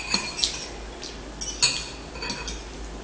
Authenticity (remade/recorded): recorded